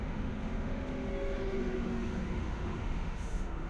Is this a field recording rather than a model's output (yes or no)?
no